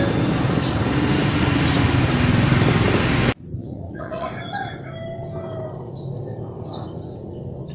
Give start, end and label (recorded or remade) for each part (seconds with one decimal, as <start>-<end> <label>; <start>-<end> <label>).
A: 0.0-3.6 recorded; 3.6-4.3 remade; 4.3-7.7 recorded